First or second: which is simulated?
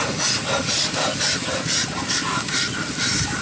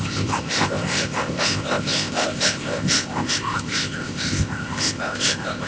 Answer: second